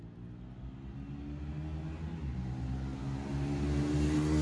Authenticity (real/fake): real